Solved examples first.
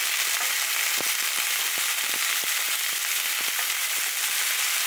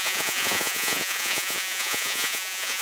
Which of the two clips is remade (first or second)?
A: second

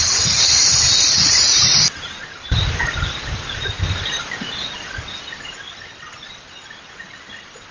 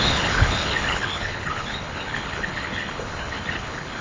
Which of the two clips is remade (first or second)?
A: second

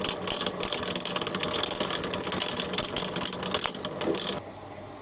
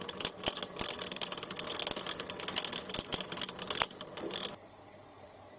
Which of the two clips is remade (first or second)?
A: second